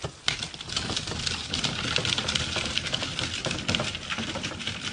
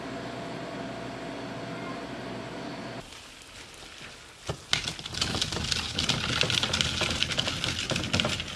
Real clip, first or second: second